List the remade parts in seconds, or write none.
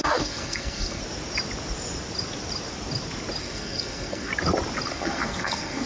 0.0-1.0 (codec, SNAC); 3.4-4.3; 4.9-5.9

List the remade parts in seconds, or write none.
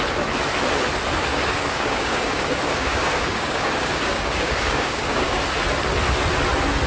1.3-5.4 (codec, DAC)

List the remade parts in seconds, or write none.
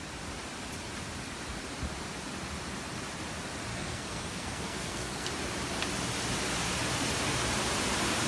3.7-5.3 (codec, SNAC)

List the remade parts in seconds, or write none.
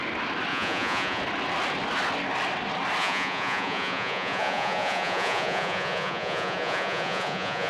0.5-1.2 (vocoder, Vocos); 3.0-7.7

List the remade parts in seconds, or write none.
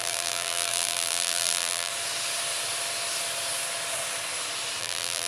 0.0-1.9 (vocoder, BigVGAN v2); 4.8-5.3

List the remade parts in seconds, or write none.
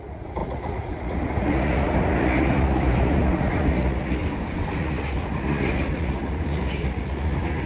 0.0-4.2 (vocoder, Vocos); 4.7-7.7